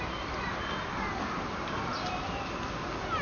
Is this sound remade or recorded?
recorded